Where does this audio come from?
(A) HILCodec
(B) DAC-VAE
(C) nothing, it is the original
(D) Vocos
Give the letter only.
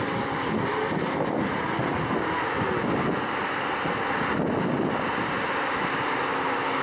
C